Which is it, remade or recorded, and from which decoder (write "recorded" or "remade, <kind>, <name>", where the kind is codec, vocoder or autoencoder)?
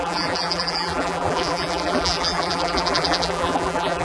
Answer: remade, vocoder, BigVGAN v2